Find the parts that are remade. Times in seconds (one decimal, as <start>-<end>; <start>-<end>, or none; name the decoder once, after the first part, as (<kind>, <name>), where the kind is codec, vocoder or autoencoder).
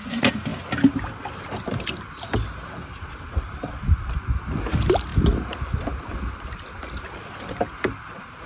none